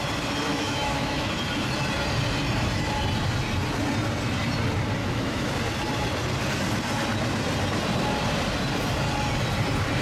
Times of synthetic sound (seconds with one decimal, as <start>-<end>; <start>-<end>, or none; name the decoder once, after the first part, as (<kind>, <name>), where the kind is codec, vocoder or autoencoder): 0.5-1.3 (autoencoder, DAC-VAE); 5.0-5.5